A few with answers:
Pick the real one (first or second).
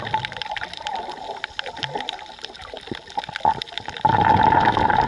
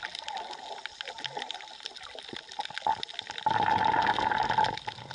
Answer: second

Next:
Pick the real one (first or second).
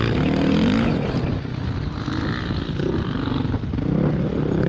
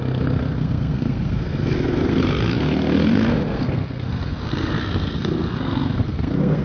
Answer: first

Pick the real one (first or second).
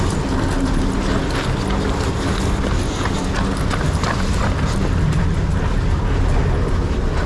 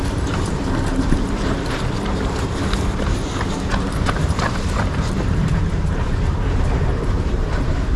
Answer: first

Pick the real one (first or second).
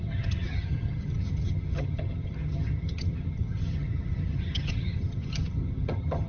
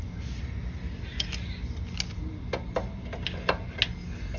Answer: second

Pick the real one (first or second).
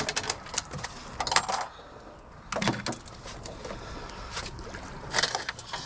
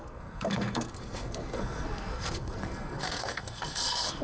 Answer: first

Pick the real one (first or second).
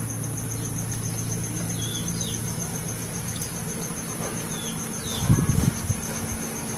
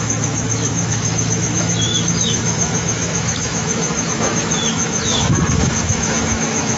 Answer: first